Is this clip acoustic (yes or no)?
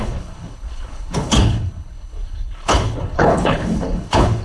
no